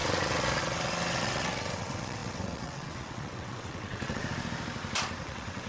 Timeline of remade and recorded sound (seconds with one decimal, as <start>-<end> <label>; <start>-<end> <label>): 0.0-4.2 remade; 4.2-5.2 recorded; 5.2-5.7 remade